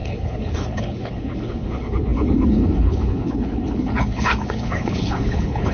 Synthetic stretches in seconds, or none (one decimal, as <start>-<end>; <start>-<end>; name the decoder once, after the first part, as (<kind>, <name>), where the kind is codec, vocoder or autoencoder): 0.0-5.7 (codec, HILCodec)